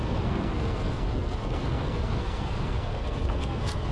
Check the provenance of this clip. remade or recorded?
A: remade